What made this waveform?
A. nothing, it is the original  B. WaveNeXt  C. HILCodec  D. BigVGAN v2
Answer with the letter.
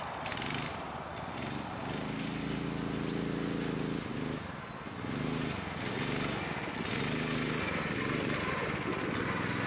A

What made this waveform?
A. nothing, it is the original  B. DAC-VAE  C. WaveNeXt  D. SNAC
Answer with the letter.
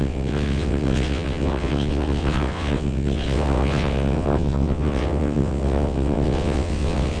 C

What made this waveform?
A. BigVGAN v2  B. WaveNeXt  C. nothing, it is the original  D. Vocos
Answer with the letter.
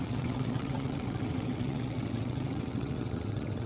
B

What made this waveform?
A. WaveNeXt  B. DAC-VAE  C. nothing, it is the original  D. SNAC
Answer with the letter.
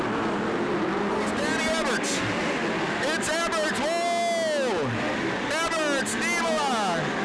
C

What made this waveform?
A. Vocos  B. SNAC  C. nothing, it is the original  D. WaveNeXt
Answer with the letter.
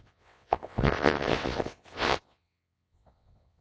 D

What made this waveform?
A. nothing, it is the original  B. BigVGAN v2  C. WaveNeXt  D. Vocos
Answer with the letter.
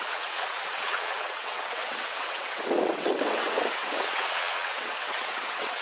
C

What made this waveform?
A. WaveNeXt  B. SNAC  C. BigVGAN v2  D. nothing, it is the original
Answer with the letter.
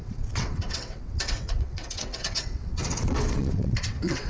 A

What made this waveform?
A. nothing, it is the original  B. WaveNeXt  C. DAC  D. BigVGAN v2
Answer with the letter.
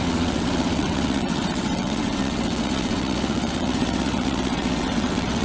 B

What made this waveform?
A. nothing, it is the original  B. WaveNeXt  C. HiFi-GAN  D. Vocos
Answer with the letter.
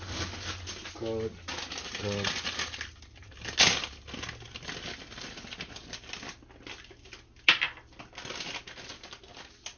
A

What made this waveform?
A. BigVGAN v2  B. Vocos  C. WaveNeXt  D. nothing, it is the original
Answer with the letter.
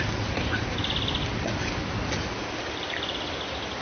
D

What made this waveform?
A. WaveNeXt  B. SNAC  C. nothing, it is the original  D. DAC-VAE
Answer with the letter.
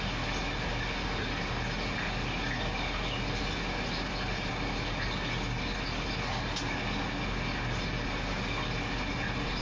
C